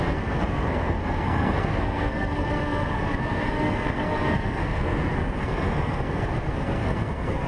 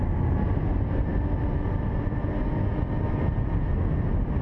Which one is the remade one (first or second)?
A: first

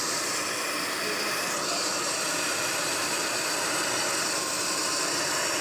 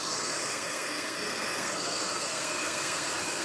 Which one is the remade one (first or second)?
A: second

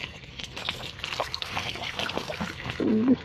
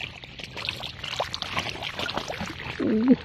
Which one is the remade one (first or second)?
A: first